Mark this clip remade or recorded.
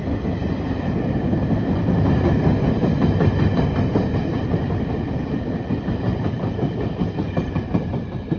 recorded